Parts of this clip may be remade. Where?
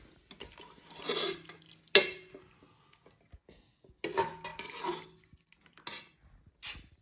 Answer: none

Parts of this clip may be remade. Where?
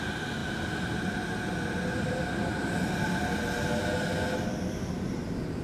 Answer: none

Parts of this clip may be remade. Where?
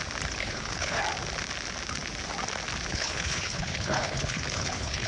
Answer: 0.4-1.0 (codec, HILCodec); 2.9-5.1